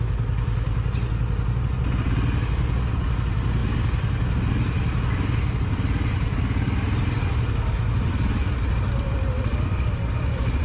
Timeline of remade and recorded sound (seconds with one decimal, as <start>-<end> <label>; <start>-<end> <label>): 0.0-10.6 recorded